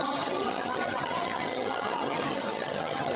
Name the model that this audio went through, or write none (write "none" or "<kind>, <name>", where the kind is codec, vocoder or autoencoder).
vocoder, HiFi-GAN